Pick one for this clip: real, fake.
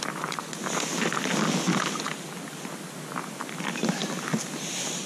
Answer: real